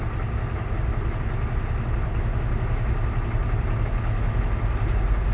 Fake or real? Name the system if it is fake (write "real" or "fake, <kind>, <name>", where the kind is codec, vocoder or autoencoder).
real